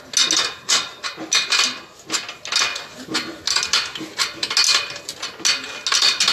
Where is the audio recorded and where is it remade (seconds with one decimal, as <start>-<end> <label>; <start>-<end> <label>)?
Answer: 0.0-6.3 recorded